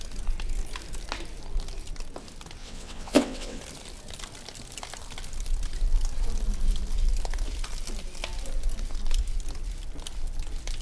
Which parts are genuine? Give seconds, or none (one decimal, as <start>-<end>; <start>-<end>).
0.0-2.6; 3.6-10.8